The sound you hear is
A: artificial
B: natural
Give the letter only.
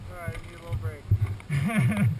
B